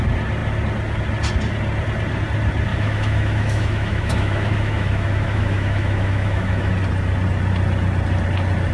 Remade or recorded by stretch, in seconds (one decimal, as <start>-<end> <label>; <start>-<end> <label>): 0.0-2.7 recorded; 2.7-6.7 remade; 6.7-8.7 recorded

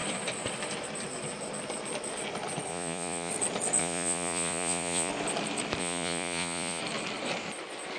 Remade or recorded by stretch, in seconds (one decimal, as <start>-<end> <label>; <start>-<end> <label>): 0.0-2.7 recorded; 2.7-3.3 remade; 3.3-3.8 recorded; 3.8-5.1 remade; 5.1-5.8 recorded; 5.8-6.8 remade; 6.8-8.0 recorded

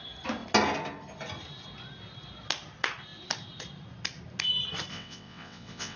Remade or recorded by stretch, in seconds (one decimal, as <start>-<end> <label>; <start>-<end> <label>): 0.0-4.9 recorded; 4.9-6.0 remade